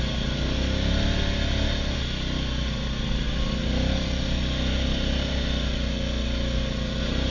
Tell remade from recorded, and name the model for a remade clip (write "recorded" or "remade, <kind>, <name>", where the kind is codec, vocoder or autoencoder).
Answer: recorded